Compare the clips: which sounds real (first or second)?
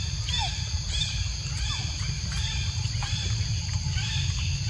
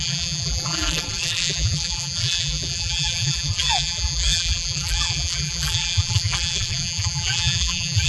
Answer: first